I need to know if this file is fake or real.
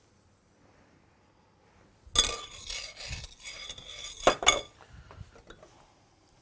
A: real